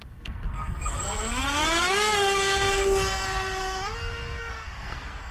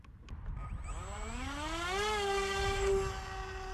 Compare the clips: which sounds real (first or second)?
second